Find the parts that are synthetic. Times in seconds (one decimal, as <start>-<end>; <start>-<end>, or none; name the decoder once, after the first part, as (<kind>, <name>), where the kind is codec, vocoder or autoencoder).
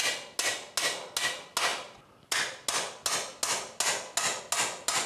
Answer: none